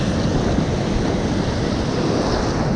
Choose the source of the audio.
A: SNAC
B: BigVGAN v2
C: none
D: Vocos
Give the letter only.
C